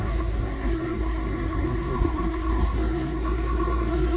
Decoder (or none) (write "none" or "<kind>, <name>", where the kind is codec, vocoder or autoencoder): codec, SNAC